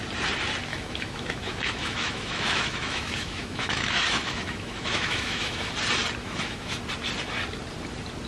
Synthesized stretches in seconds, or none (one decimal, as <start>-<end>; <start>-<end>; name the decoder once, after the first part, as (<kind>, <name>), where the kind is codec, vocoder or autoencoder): 0.7-5.7 (autoencoder, DAC-VAE); 6.2-6.8